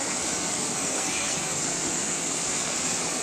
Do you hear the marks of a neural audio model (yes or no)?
yes